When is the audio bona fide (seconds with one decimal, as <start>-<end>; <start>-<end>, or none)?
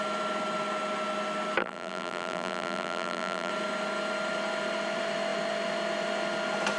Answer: 0.0-1.6; 3.5-6.8